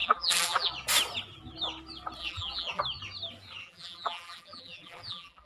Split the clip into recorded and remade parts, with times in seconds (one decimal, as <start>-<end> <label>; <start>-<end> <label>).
0.0-0.7 remade; 0.7-2.2 recorded; 2.2-2.8 remade; 2.8-3.6 recorded; 3.6-5.5 remade